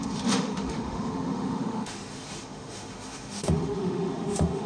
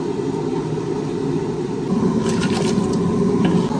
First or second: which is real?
second